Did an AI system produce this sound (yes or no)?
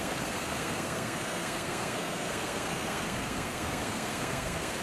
yes